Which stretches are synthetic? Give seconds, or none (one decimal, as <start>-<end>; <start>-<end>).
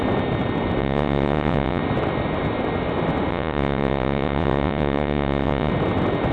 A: 0.8-1.8; 3.3-5.7